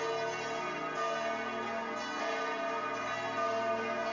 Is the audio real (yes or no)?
yes